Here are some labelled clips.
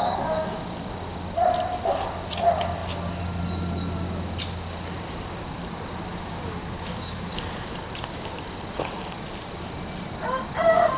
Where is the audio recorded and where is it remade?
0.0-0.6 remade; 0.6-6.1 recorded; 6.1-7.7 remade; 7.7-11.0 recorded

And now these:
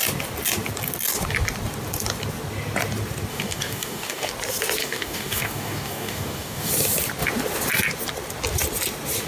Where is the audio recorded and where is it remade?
0.0-3.3 recorded; 3.3-4.3 remade; 4.3-4.8 recorded; 4.8-6.7 remade; 6.7-9.3 recorded

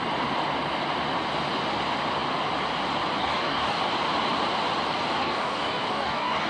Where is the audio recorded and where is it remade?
0.0-3.2 recorded; 3.2-3.8 remade; 3.8-5.2 recorded; 5.2-6.5 remade

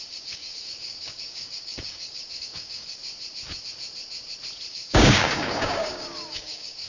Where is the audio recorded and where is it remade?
0.0-3.0 remade; 3.0-4.7 recorded; 4.7-6.9 remade

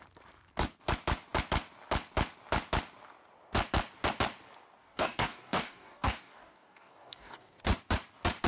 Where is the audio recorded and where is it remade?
0.0-4.8 recorded; 4.8-7.6 remade; 7.6-8.5 recorded

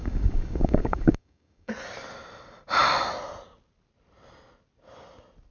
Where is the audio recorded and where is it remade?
0.0-1.7 remade; 1.7-5.5 recorded

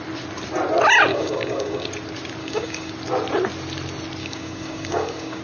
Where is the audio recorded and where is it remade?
0.0-1.1 recorded; 1.1-1.9 remade; 1.9-2.4 recorded; 2.4-2.9 remade; 2.9-4.2 recorded; 4.2-5.4 remade

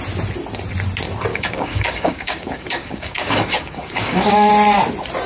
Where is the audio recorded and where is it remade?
0.0-1.3 recorded; 1.3-4.5 remade; 4.5-5.3 recorded